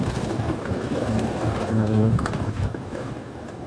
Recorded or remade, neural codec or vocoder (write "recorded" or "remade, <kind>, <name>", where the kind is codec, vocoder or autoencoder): remade, codec, DAC